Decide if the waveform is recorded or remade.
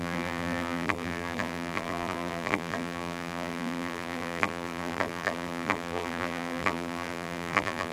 remade